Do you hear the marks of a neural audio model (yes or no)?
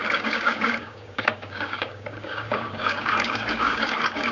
yes